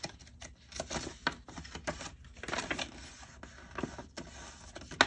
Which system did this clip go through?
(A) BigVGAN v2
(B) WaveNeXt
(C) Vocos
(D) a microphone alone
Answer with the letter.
D